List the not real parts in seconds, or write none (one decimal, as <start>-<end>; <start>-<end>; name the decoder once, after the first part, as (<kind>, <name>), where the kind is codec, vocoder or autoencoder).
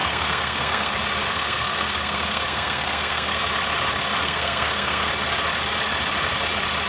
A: 0.0-0.9 (codec, SNAC); 1.3-3.4; 4.2-5.1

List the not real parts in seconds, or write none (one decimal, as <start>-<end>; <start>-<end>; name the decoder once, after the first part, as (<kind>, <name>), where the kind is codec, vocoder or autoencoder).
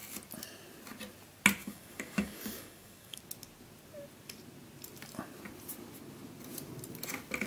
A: 1.6-3.2 (codec, DAC)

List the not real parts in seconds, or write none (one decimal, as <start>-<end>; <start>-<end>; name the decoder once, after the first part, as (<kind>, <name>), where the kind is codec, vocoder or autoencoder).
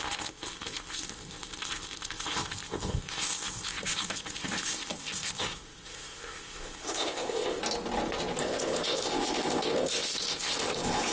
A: 0.0-7.6 (codec, ZipCodec); 8.4-11.1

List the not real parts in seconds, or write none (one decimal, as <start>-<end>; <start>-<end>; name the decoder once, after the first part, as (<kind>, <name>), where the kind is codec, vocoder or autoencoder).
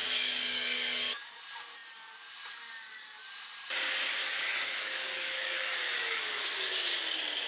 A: 0.0-1.4 (codec, DAC); 4.2-6.4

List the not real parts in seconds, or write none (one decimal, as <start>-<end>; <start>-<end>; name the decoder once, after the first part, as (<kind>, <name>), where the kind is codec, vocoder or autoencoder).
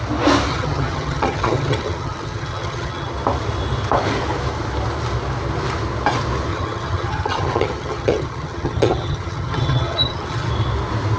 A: 0.5-3.1 (vocoder, HiFi-GAN); 6.5-10.5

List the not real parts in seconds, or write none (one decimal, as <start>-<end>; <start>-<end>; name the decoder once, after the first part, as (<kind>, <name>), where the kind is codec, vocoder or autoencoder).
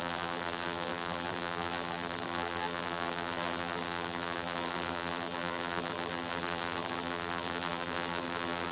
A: 0.0-8.7 (vocoder, BigVGAN v2)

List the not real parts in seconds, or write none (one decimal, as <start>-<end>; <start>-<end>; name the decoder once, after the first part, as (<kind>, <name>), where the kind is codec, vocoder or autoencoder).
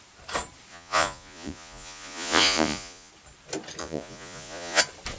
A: 0.7-3.1 (vocoder, Vocos); 3.8-4.8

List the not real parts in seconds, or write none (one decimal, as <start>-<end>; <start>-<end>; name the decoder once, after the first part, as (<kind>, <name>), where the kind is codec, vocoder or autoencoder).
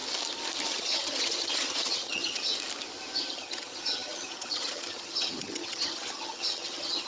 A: 0.7-2.5 (vocoder, HiFi-GAN); 3.3-7.1